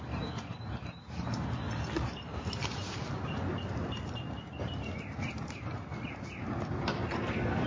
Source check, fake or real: real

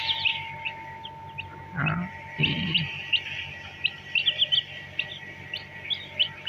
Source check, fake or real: real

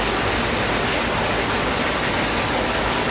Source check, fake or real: real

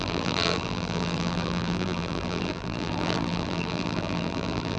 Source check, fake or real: fake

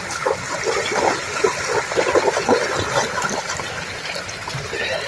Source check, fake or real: real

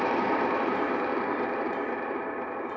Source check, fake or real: fake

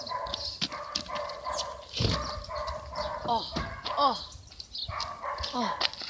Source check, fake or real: real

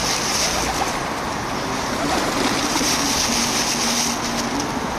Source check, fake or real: real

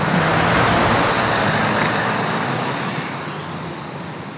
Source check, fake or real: real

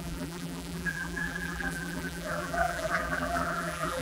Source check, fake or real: fake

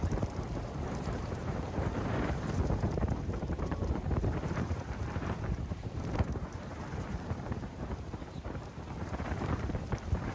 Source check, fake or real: fake